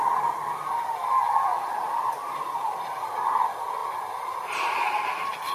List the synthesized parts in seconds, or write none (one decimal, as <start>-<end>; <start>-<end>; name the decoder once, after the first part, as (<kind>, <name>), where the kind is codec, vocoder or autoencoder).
none